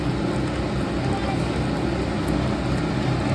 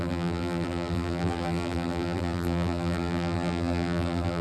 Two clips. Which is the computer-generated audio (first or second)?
second